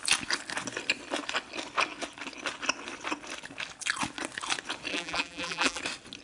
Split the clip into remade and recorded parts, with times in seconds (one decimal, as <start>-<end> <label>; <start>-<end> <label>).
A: 0.0-4.9 recorded; 4.9-5.8 remade; 5.8-6.2 recorded